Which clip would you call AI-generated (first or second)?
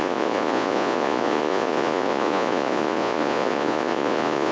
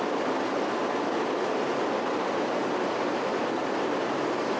first